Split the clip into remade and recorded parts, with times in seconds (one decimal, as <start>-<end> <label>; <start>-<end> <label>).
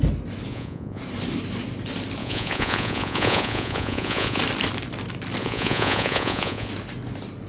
0.0-0.5 recorded; 0.5-1.0 remade; 1.0-2.2 recorded; 2.2-4.4 remade; 4.4-5.4 recorded; 5.4-6.7 remade; 6.7-7.5 recorded